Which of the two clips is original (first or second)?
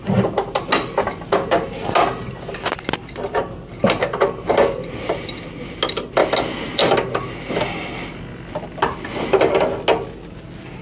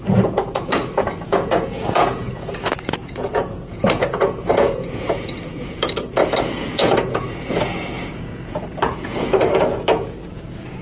first